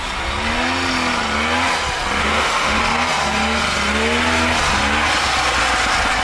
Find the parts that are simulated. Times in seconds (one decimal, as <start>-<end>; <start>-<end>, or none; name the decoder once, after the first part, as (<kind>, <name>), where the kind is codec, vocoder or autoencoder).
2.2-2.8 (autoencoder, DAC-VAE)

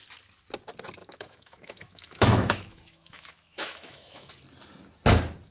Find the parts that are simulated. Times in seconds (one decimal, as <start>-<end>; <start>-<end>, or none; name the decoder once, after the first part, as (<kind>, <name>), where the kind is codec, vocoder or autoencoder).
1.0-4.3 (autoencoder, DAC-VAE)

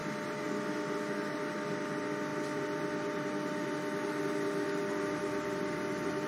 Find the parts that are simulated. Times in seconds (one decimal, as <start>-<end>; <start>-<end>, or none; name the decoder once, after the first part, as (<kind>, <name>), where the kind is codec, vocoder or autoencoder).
none

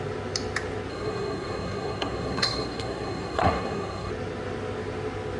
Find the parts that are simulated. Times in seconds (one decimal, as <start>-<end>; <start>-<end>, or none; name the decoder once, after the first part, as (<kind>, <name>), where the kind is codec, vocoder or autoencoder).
0.9-4.1 (codec, SNAC)

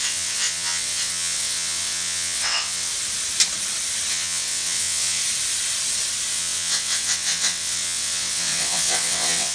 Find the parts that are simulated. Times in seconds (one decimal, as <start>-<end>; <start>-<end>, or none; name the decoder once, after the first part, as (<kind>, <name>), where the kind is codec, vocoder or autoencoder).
0.0-2.9 (vocoder, WaveNeXt); 4.1-5.2; 6.3-9.5

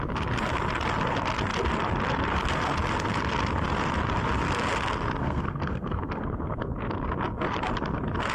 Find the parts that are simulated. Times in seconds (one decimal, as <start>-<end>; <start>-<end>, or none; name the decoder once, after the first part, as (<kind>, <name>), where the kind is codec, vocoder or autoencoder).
5.2-6.6 (codec, SNAC)

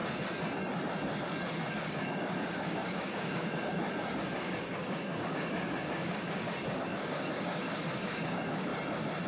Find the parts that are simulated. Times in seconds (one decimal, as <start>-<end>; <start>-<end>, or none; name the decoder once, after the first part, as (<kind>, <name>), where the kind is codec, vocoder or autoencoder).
1.7-8.7 (codec, DAC)